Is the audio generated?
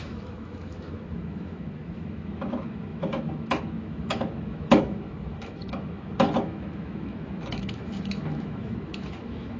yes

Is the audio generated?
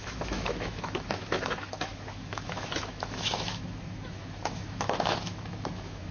yes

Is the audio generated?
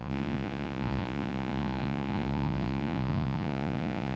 yes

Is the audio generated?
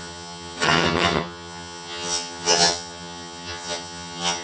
yes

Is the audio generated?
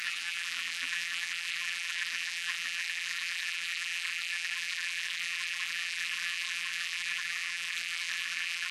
yes